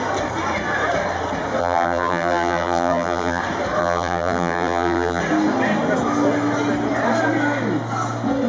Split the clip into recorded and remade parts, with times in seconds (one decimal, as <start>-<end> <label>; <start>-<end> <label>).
0.0-1.6 recorded; 1.6-3.4 remade; 3.4-3.8 recorded; 3.8-5.2 remade; 5.2-8.5 recorded